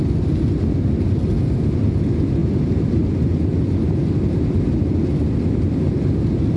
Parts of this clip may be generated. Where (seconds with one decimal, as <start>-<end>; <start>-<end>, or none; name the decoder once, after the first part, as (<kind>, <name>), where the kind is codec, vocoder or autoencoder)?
none